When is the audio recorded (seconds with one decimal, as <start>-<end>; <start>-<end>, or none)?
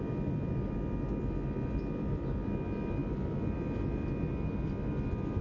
0.0-5.4